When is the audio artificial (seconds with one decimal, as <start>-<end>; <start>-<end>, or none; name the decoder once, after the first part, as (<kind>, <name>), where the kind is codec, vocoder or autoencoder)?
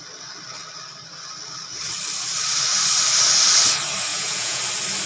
4.1-4.6 (vocoder, Vocos)